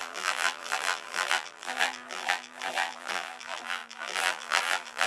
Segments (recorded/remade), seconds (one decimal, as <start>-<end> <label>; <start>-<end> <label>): 0.0-5.1 remade